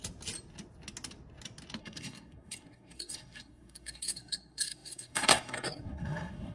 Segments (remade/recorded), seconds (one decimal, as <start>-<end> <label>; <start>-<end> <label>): 0.0-1.8 recorded; 1.8-6.5 remade